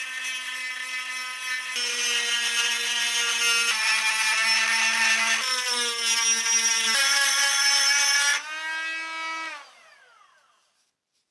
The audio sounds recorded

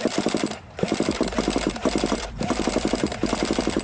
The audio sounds remade